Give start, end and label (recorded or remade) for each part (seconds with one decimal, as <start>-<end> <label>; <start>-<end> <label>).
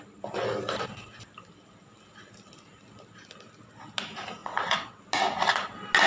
0.0-4.4 recorded; 4.4-5.0 remade; 5.0-6.1 recorded